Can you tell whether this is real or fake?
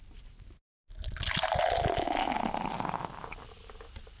real